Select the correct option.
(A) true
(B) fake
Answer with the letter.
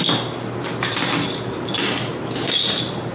A